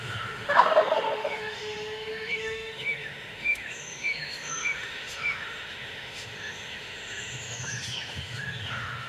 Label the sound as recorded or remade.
remade